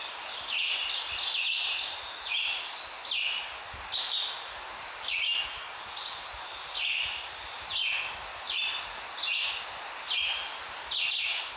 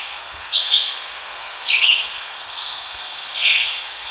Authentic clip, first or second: first